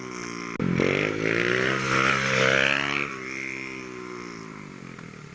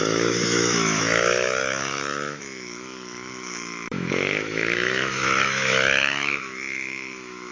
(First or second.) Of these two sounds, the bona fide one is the first